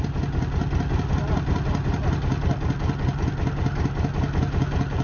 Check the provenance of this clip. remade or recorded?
recorded